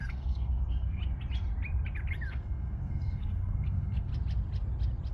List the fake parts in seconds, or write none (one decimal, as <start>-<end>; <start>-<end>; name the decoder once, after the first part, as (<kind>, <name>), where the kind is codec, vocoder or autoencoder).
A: 0.0-1.0 (codec, SNAC); 2.3-4.1